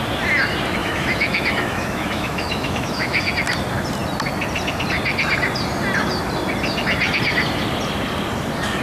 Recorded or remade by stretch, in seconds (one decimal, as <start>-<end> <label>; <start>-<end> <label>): 0.0-0.8 recorded; 0.8-3.3 remade; 3.3-8.8 recorded